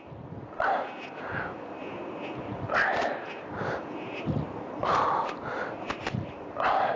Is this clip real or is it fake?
real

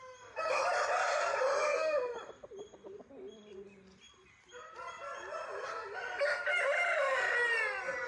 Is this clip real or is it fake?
real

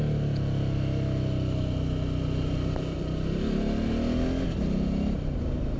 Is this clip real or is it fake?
real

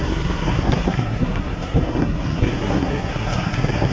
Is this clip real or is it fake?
fake